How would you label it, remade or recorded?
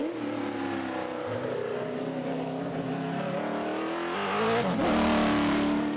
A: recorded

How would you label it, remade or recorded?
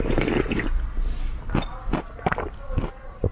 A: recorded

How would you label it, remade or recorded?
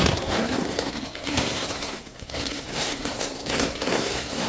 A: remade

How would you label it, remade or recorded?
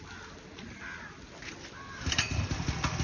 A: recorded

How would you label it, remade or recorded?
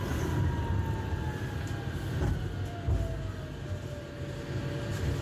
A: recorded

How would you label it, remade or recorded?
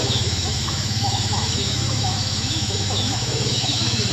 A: remade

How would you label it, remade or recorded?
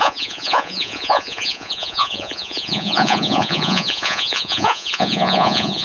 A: remade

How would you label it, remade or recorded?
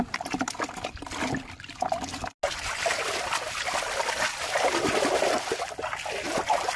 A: recorded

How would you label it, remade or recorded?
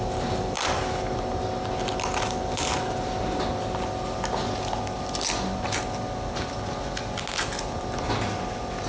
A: recorded